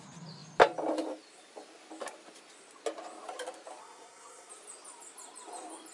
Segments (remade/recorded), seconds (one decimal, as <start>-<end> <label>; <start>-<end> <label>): 0.0-3.8 recorded; 3.8-4.5 remade; 4.5-5.9 recorded